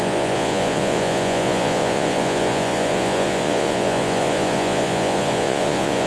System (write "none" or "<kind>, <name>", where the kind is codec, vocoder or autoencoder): vocoder, Vocos